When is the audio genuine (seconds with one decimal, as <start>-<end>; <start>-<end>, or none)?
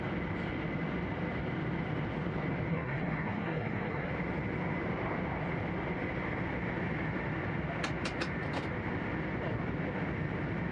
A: 0.0-2.7; 4.1-10.7